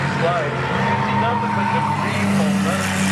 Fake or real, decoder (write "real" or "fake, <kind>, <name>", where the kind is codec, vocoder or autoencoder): real